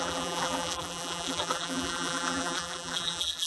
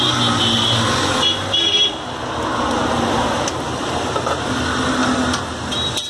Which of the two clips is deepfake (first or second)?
first